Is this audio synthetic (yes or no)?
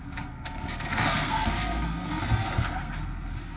yes